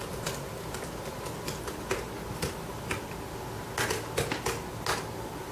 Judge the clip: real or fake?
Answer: real